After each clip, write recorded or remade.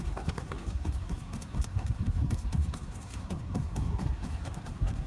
remade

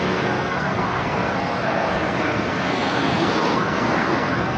remade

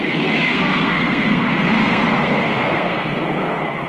remade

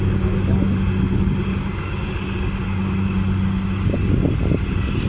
recorded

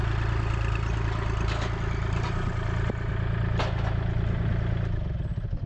recorded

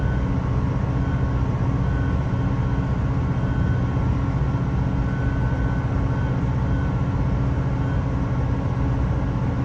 recorded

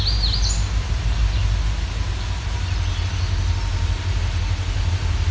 recorded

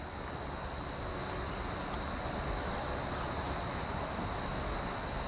recorded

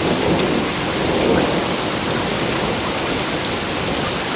recorded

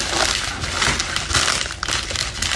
recorded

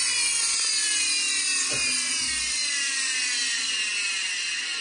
recorded